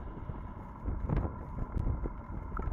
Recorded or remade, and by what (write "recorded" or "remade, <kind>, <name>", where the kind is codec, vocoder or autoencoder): recorded